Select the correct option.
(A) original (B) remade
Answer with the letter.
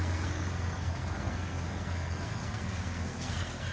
B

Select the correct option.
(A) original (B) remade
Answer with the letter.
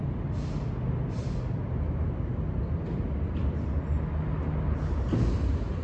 A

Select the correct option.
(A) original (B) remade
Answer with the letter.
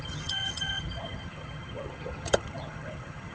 B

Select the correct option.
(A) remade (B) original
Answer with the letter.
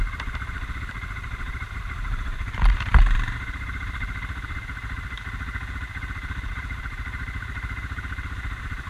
A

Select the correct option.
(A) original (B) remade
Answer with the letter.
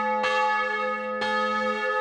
A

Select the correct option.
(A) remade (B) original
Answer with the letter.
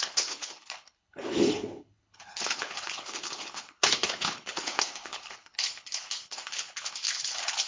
A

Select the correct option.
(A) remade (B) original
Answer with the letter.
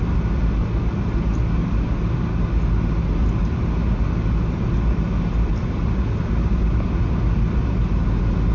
B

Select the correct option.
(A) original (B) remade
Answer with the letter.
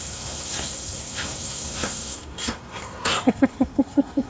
B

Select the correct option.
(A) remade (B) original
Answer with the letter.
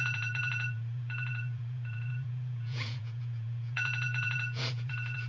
A